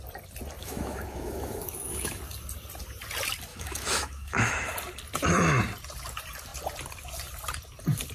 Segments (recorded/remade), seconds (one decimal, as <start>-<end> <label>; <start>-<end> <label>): 0.0-0.6 recorded; 0.6-2.2 remade; 2.2-3.5 recorded; 3.5-4.7 remade; 4.7-8.1 recorded